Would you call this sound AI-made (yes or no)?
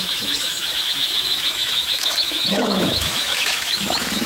yes